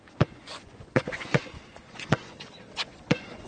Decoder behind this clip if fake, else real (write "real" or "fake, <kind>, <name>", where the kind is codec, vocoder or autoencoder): fake, vocoder, Vocos